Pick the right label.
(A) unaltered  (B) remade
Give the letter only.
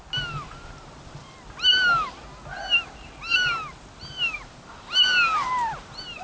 A